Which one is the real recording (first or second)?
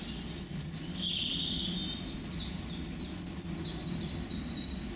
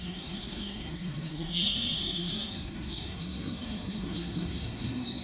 first